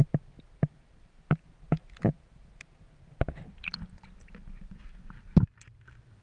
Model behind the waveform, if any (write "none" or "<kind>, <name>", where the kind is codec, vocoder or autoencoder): none